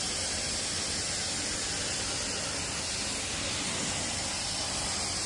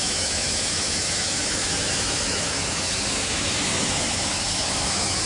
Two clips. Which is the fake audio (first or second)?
second